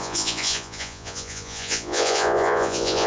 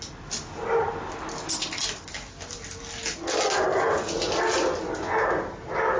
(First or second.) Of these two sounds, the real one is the second